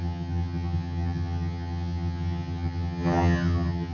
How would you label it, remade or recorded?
remade